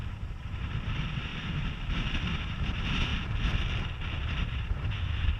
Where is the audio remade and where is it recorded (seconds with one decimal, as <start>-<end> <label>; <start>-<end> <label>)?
0.0-1.3 remade; 1.3-2.2 recorded; 2.2-3.1 remade; 3.1-4.3 recorded; 4.3-5.4 remade